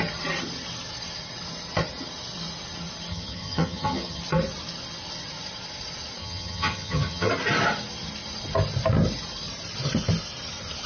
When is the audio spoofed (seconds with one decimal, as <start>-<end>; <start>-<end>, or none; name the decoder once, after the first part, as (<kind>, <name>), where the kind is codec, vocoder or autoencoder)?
3.1-4.2 (vocoder, HiFi-GAN); 6.2-7.3